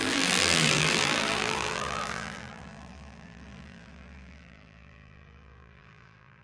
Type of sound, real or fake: fake